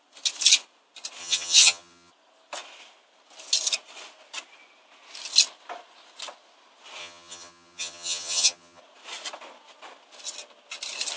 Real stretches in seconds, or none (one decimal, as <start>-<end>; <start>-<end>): 0.0-1.2; 2.1-7.0; 8.8-11.2